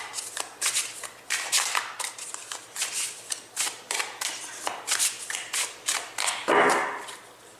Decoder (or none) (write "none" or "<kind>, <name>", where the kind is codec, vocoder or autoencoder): none